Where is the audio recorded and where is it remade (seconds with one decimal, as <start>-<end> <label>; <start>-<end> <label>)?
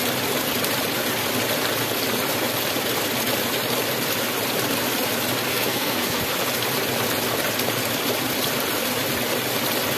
0.0-5.5 recorded; 5.5-6.2 remade; 6.2-10.0 recorded